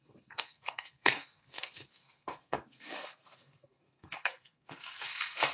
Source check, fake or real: fake